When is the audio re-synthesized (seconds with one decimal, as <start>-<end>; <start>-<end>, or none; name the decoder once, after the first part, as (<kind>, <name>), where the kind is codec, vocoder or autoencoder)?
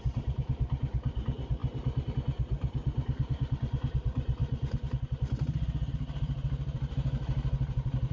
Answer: 0.0-4.4 (vocoder, BigVGAN v2); 5.9-8.1